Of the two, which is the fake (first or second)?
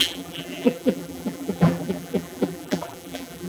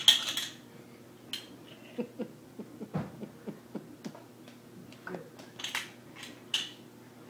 first